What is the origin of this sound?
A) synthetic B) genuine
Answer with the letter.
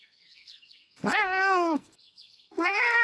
A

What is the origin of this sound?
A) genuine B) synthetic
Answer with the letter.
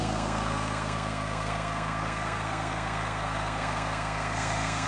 B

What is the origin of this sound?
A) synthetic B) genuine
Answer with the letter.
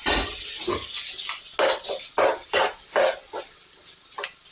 B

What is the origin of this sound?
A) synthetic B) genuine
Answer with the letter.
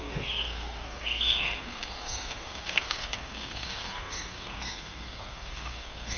A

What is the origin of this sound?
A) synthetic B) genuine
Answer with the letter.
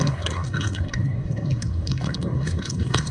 A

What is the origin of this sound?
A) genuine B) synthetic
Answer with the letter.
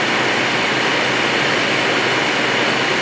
A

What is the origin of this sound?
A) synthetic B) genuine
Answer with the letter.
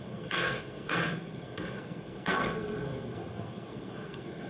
A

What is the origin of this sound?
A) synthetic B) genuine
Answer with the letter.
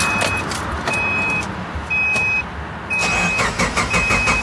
B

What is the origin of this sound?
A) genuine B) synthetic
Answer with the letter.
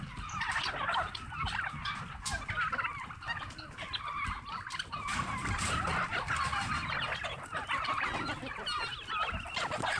A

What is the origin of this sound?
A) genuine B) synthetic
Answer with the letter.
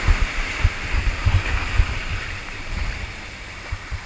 A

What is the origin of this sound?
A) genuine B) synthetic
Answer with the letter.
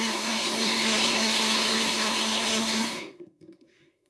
B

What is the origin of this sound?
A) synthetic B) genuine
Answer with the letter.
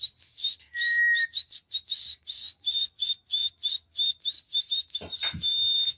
B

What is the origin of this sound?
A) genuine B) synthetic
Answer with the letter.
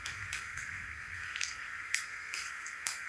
B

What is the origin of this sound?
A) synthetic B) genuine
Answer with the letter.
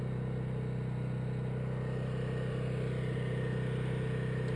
B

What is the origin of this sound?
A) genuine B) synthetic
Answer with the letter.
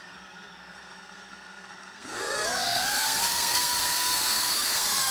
B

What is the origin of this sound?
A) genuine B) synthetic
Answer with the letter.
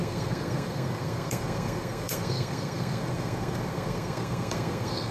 B